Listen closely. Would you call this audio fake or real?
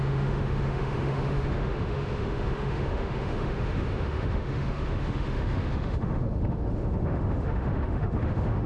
fake